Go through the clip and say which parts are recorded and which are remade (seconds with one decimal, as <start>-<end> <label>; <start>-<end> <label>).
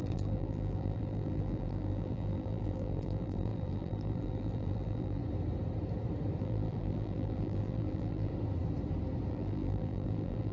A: 0.0-5.2 remade; 5.2-6.4 recorded; 6.4-8.3 remade; 8.3-9.3 recorded; 9.3-10.5 remade